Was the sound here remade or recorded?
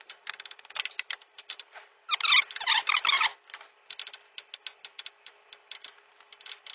recorded